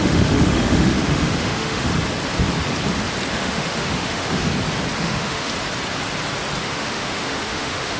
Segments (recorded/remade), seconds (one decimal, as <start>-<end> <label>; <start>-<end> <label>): 0.0-1.9 remade; 1.9-3.3 recorded; 3.3-4.5 remade; 4.5-5.0 recorded; 5.0-5.5 remade; 5.5-6.6 recorded; 6.6-8.0 remade